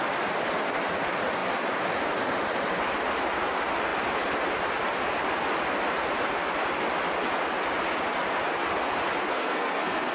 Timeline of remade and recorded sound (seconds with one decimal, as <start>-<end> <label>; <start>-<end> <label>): 0.0-9.3 recorded; 9.3-10.1 remade